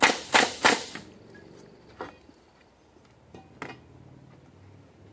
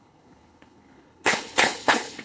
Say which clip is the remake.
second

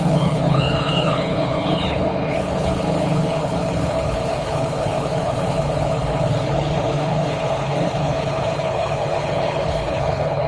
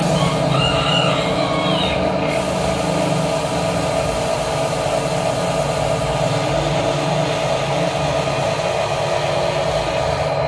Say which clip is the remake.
first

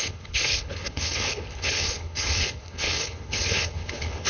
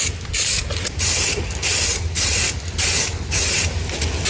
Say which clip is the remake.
first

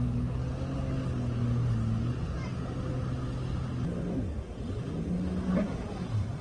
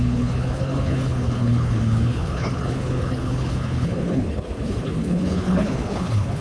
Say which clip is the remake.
second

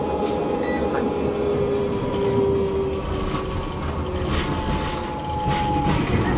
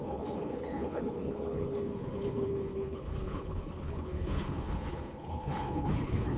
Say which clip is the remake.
second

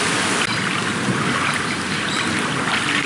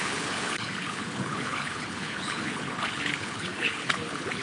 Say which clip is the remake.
second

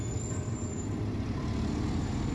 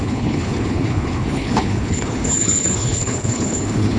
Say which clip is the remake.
second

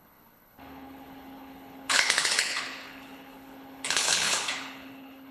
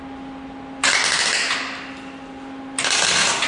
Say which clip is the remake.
first